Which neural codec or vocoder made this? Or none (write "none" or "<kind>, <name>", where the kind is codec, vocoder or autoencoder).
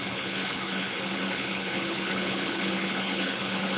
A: codec, HILCodec